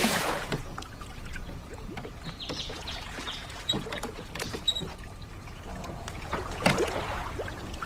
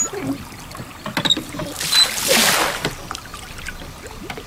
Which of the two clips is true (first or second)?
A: second